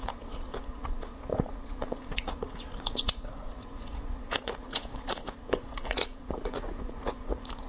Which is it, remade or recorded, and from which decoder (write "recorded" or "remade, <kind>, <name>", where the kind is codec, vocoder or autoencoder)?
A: remade, vocoder, Vocos